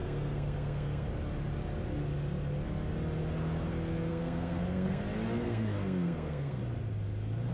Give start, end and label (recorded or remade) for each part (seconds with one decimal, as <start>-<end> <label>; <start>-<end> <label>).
0.0-1.1 remade; 1.1-4.1 recorded; 4.1-5.0 remade; 5.0-5.4 recorded; 5.4-6.6 remade; 6.6-7.5 recorded